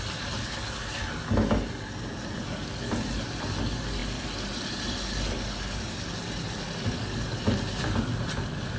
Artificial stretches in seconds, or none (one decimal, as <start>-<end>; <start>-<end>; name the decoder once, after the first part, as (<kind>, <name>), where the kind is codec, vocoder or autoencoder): none

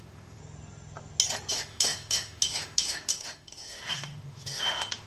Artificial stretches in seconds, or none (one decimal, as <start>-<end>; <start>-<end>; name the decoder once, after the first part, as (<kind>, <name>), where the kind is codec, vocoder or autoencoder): 0.0-0.4 (autoencoder, DAC-VAE); 1.5-5.1

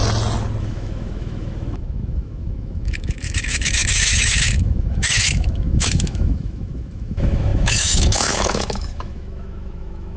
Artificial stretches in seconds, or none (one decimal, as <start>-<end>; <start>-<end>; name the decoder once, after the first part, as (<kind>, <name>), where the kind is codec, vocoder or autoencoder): 0.6-10.2 (autoencoder, DAC-VAE)

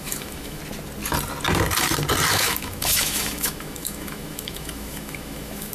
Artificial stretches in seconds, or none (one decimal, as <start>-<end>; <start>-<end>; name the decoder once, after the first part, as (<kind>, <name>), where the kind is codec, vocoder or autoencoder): 0.0-0.6 (autoencoder, DAC-VAE); 2.3-5.7

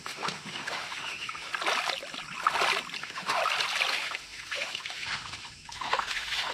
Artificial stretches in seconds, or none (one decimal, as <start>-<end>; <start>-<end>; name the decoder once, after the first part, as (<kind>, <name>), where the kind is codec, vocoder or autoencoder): 0.0-1.5 (autoencoder, DAC-VAE); 3.0-3.4; 3.9-6.5

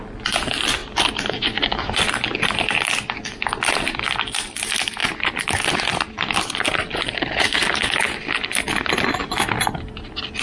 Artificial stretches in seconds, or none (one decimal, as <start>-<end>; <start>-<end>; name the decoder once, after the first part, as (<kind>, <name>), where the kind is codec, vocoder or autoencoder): none

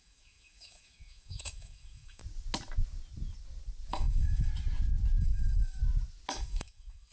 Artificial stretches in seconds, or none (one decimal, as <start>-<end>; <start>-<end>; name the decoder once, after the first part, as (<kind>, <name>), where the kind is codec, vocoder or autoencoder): 0.0-2.2 (autoencoder, DAC-VAE); 3.9-4.5; 5.2-5.8; 6.3-7.1